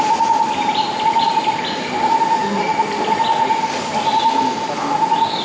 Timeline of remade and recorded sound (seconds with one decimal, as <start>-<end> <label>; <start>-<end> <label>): 0.0-5.4 recorded